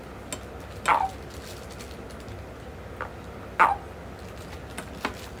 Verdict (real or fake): real